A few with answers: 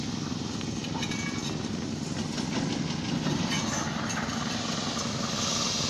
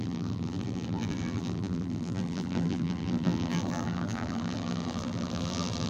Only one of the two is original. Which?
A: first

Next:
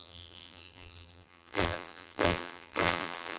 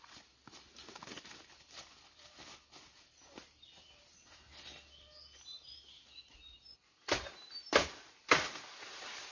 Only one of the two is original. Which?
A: second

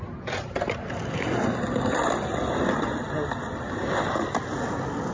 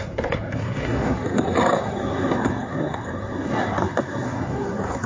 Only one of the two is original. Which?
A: first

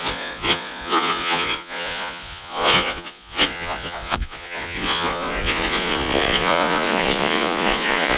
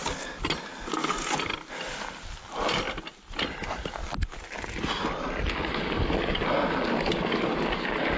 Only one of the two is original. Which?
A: second